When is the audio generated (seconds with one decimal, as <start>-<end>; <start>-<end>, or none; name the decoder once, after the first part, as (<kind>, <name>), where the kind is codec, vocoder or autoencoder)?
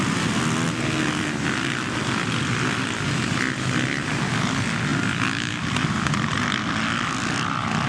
none